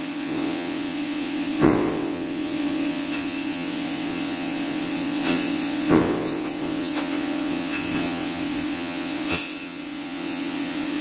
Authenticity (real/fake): fake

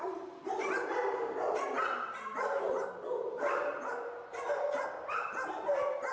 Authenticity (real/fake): real